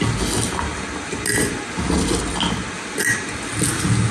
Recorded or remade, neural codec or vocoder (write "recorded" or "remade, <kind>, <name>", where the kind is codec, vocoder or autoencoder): recorded